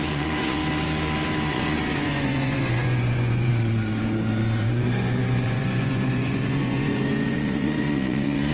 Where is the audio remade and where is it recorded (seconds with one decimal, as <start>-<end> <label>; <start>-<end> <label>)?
0.0-0.6 remade; 0.6-1.5 recorded; 1.5-8.5 remade